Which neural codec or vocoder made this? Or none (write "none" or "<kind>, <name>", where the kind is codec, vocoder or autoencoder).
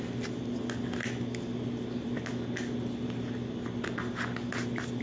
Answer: none